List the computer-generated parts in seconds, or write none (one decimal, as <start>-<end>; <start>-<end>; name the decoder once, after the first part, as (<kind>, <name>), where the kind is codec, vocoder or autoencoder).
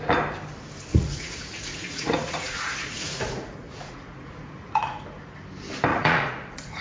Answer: 0.9-5.0 (vocoder, Vocos); 5.9-6.8